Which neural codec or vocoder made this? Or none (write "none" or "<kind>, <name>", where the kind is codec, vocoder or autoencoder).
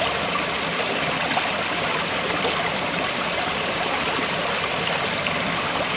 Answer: none